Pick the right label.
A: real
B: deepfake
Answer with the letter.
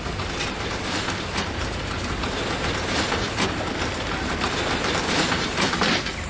B